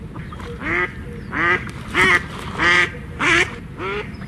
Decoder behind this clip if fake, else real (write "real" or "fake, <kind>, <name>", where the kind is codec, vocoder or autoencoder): real